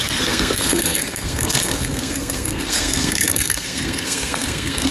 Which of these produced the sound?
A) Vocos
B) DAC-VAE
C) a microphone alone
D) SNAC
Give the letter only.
D